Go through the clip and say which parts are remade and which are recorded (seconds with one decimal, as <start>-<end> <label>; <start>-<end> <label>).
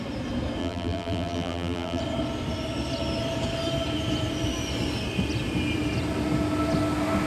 0.0-0.6 recorded; 0.6-2.0 remade; 2.0-7.3 recorded